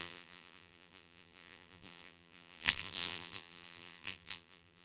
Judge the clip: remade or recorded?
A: remade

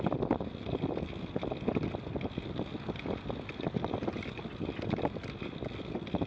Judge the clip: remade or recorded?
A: recorded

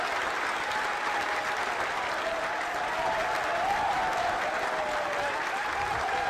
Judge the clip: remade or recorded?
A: recorded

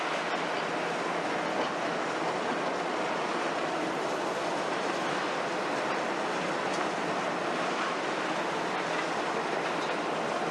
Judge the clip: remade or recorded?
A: recorded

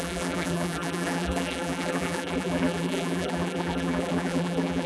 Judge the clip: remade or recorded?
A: remade